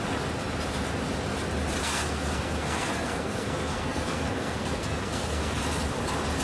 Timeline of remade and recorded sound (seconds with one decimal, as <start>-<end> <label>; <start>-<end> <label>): 0.0-1.8 recorded; 1.8-5.6 remade; 5.6-6.4 recorded